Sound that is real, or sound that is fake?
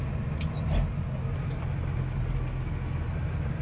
real